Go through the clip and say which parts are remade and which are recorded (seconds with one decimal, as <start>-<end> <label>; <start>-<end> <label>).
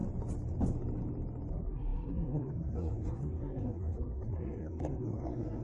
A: 0.0-1.5 recorded; 1.5-5.6 remade